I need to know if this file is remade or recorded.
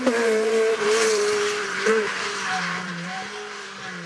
remade